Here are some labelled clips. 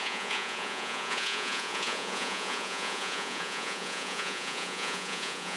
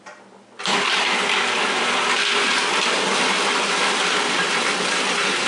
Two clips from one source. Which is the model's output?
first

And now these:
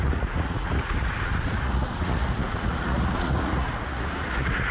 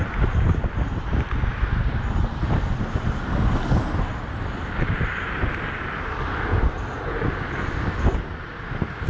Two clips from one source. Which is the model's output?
first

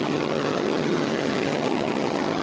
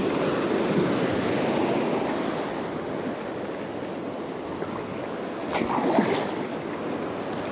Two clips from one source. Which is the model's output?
first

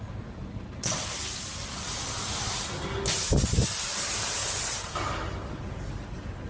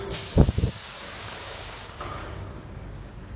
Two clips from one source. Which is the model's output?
second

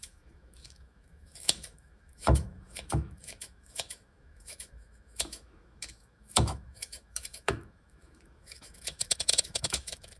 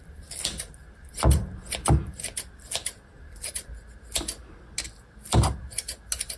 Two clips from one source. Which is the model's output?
first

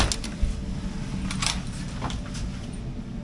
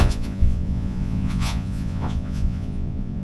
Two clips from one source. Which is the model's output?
second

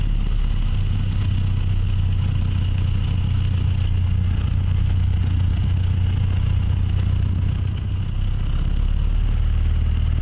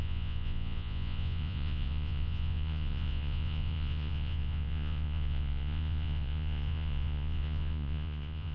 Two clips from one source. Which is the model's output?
second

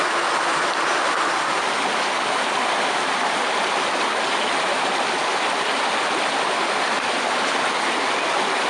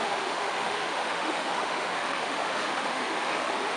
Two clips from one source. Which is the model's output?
second